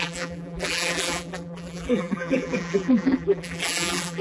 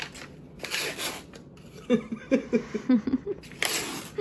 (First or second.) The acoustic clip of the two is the second